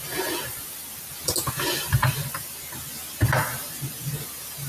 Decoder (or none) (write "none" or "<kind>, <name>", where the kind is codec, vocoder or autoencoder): none